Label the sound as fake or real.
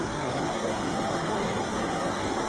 fake